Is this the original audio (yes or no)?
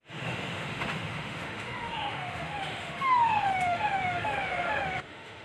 no